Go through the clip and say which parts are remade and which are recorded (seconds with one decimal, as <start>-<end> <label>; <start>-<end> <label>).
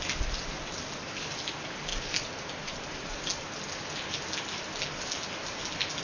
0.0-6.0 recorded